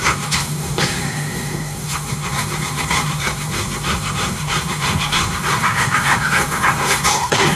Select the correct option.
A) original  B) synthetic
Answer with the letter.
B